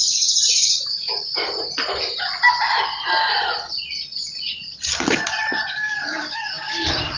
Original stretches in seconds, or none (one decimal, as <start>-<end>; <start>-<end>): 0.0-0.5; 1.4-5.7